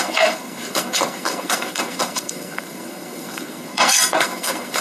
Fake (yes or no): yes